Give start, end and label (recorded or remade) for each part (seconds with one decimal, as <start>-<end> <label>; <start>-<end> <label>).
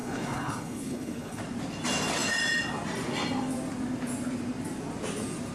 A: 0.0-1.4 remade; 1.4-5.5 recorded